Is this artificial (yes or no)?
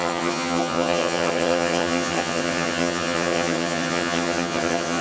yes